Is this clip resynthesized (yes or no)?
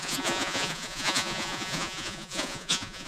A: yes